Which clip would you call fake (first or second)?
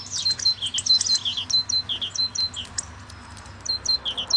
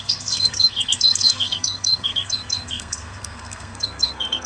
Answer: second